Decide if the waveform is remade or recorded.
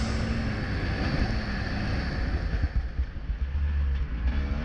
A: recorded